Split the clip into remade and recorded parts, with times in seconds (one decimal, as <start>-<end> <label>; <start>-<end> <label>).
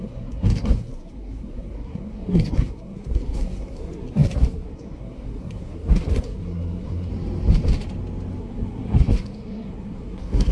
0.0-7.1 remade; 7.1-8.4 recorded; 8.4-10.5 remade